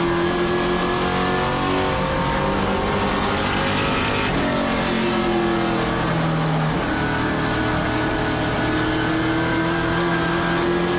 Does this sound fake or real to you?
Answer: real